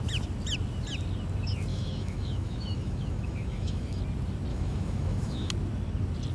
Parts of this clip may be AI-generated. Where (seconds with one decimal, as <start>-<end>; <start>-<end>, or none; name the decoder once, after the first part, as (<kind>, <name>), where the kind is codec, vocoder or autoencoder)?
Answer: 1.7-4.0 (autoencoder, DAC-VAE); 4.5-5.5